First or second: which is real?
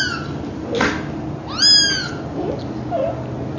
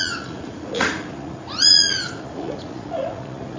first